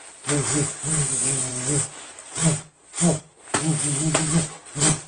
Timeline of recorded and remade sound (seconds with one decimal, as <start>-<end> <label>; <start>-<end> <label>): 0.0-5.1 recorded